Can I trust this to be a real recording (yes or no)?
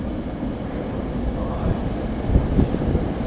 yes